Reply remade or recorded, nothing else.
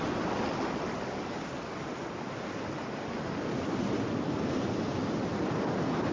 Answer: recorded